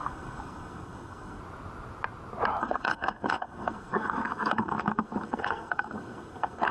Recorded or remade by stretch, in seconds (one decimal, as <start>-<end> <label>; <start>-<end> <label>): 0.0-1.4 remade; 1.4-2.6 recorded; 2.6-6.7 remade